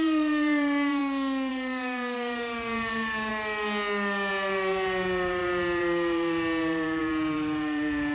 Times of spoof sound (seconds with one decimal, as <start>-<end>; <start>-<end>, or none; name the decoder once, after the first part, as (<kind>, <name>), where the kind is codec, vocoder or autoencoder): 0.0-1.0 (vocoder, BigVGAN v2); 1.5-3.3; 4.3-8.1